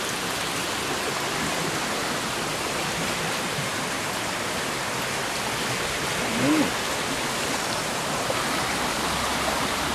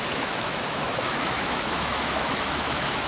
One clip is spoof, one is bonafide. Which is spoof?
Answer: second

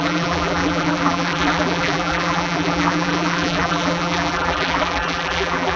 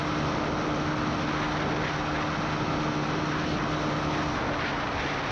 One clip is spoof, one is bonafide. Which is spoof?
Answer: first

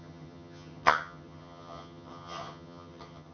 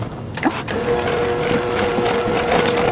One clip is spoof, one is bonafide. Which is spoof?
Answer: first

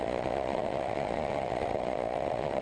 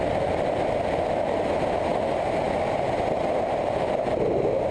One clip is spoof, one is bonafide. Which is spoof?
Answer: first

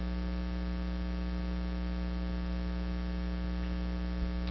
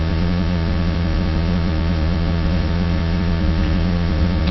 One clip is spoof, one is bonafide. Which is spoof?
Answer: second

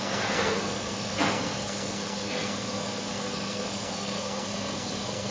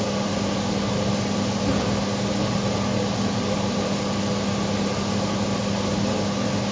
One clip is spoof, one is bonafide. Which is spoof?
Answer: first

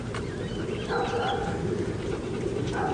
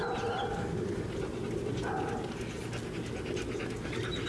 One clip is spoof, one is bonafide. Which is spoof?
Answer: first